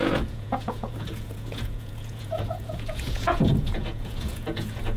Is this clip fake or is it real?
fake